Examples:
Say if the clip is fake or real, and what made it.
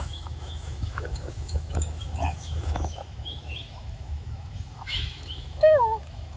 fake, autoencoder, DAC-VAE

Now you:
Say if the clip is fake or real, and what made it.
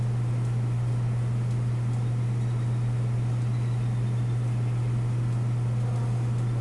real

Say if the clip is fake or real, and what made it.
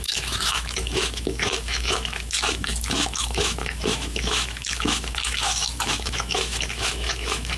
fake, autoencoder, DAC-VAE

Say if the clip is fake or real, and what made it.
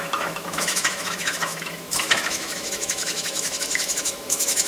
fake, autoencoder, DAC-VAE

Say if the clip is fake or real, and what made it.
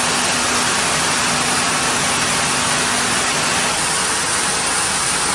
real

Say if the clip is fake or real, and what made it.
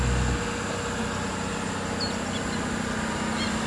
real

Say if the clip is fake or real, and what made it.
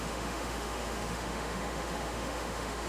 fake, autoencoder, DAC-VAE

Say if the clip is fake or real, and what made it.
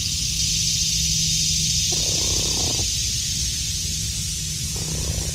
real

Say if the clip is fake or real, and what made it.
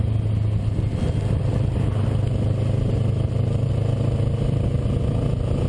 real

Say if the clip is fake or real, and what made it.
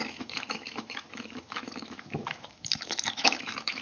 fake, autoencoder, DAC-VAE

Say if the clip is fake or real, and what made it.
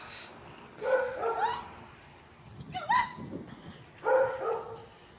real